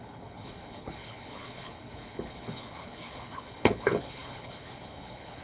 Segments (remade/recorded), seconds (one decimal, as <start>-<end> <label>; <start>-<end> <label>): 0.0-5.4 remade